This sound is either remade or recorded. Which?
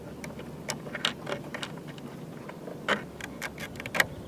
recorded